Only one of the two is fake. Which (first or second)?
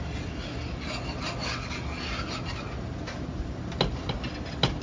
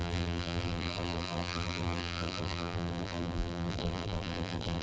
second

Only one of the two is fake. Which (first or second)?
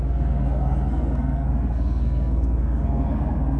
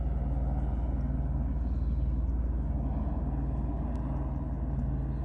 first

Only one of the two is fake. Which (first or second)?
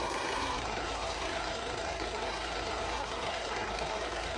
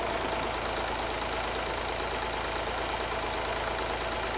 first